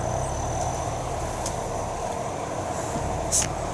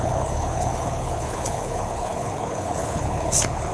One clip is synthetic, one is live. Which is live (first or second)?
first